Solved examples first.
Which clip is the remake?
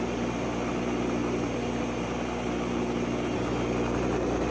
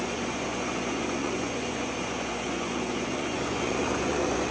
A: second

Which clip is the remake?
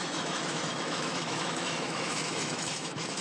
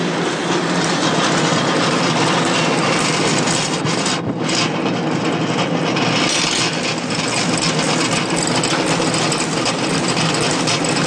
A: first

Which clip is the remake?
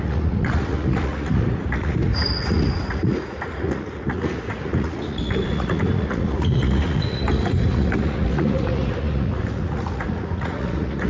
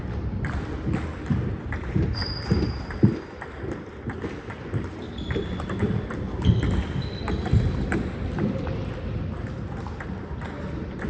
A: first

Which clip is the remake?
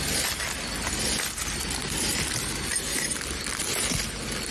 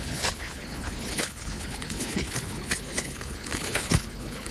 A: second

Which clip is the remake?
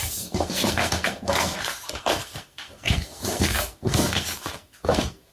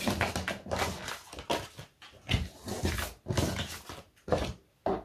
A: first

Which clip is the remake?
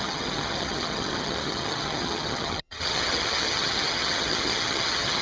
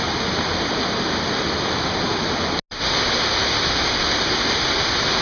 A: first